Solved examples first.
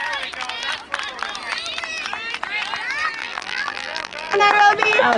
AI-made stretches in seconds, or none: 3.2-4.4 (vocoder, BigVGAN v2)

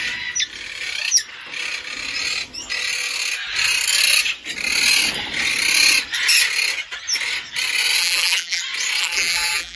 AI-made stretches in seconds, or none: 8.0-8.6 (vocoder, BigVGAN v2); 9.0-9.8